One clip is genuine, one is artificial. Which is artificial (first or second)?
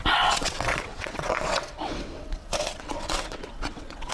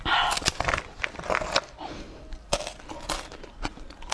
first